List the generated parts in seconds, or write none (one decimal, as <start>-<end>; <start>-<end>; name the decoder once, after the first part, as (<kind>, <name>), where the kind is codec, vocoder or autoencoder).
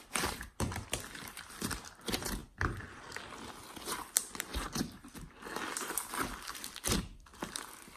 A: 0.0-2.4 (vocoder, BigVGAN v2); 4.1-4.5; 6.5-8.0